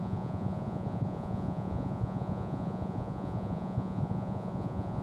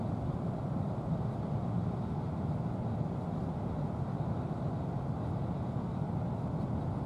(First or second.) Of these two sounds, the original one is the second